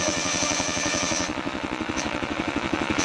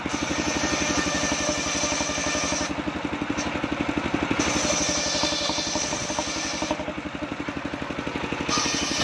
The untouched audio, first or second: second